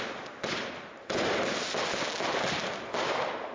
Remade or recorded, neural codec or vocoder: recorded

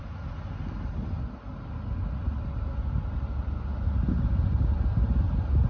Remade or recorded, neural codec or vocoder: recorded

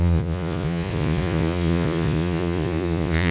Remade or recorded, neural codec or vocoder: remade, vocoder, Vocos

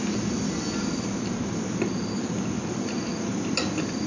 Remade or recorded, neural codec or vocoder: recorded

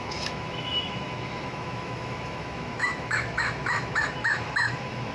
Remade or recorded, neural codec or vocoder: remade, autoencoder, DAC-VAE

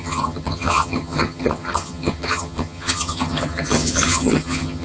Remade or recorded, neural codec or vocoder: remade, vocoder, HiFi-GAN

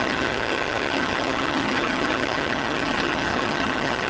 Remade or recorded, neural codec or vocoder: remade, vocoder, HiFi-GAN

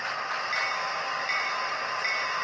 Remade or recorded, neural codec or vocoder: remade, vocoder, BigVGAN v2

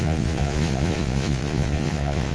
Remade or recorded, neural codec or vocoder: remade, vocoder, Vocos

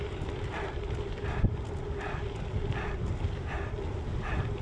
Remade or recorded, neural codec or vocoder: recorded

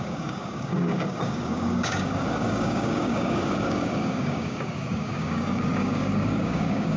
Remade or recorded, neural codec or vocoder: remade, codec, DAC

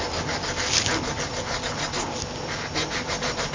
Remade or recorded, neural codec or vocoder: recorded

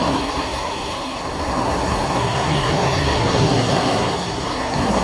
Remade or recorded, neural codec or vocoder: remade, codec, SNAC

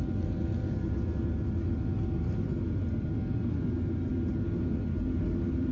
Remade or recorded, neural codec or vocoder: recorded